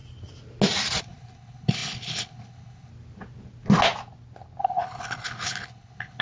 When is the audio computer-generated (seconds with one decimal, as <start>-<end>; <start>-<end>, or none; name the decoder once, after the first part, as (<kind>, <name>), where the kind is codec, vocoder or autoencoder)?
1.0-2.9 (codec, HILCodec); 4.6-6.2